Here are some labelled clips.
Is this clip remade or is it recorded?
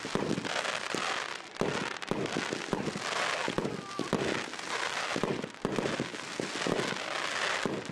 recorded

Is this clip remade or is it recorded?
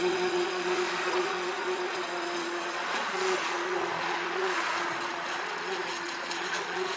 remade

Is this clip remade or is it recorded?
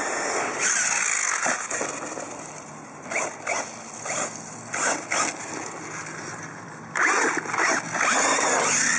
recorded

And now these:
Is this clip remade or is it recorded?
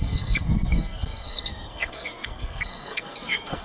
remade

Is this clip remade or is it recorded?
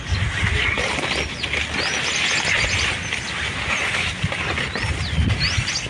recorded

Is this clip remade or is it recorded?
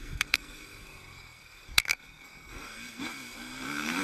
remade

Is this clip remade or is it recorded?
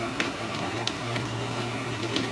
remade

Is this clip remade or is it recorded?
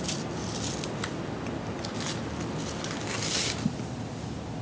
recorded